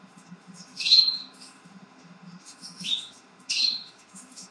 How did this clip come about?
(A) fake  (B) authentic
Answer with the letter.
A